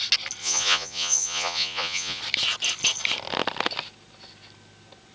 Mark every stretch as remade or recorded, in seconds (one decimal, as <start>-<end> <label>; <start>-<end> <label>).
0.0-0.4 recorded; 0.4-2.2 remade; 2.2-5.1 recorded